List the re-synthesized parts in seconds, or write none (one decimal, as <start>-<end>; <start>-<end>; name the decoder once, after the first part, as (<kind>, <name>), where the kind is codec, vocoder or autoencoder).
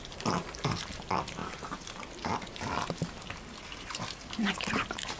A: none